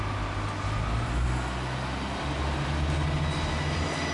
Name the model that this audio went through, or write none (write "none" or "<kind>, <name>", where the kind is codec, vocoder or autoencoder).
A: none